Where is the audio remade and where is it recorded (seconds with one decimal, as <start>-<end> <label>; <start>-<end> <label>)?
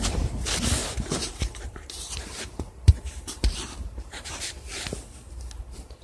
0.0-0.8 recorded; 0.8-4.4 remade; 4.4-6.0 recorded